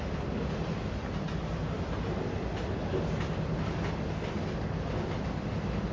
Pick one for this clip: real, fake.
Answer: real